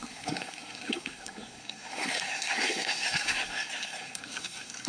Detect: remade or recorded remade